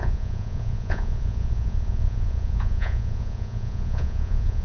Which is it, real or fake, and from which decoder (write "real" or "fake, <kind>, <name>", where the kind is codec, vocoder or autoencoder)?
fake, vocoder, Vocos